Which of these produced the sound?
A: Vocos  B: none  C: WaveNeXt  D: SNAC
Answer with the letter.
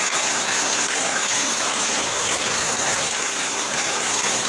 D